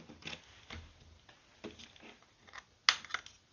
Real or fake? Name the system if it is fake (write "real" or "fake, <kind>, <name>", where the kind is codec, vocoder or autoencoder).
real